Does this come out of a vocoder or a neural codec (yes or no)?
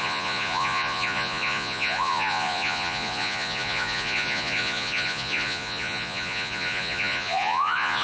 yes